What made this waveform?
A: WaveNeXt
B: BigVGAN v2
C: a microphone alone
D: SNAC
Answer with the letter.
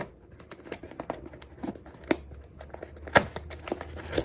C